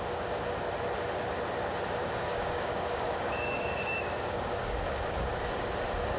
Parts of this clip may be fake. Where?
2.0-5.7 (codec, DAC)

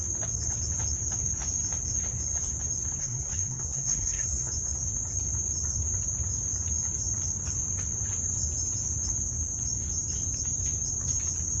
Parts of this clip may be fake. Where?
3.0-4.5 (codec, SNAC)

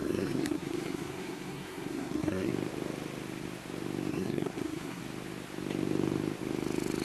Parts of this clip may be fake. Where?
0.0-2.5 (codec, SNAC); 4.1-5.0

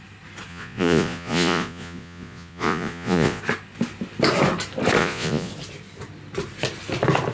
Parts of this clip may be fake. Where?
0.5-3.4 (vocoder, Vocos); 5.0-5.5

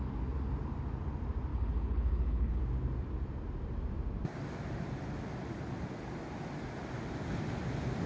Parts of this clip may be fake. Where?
1.5-2.6 (codec, HILCodec)

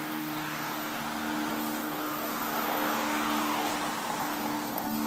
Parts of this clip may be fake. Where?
0.0-1.0 (codec, DAC); 1.5-3.7; 4.2-5.1

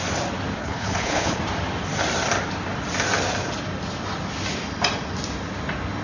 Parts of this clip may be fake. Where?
0.6-1.4 (codec, HILCodec)

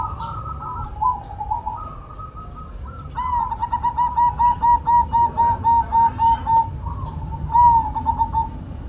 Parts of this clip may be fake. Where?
none